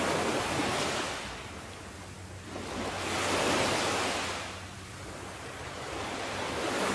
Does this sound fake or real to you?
real